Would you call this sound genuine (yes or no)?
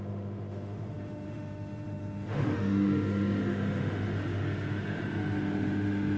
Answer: no